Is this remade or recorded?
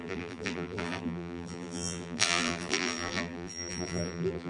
remade